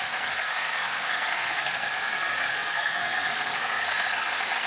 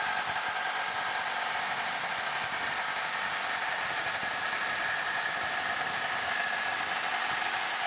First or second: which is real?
second